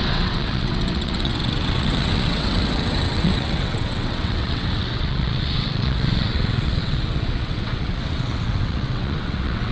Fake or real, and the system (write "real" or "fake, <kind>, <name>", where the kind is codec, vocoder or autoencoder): fake, vocoder, WaveNeXt